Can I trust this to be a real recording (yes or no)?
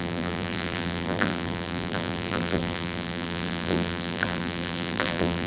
no